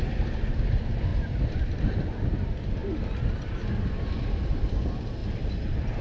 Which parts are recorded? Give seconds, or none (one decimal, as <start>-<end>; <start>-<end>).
0.0-2.8; 4.2-5.2